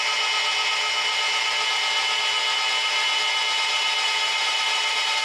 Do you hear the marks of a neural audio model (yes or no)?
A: no